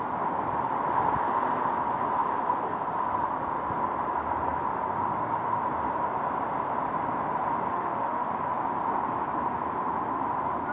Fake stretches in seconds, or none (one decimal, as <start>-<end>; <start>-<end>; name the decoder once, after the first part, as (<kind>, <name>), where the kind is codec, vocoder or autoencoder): 7.7-8.3 (autoencoder, DAC-VAE)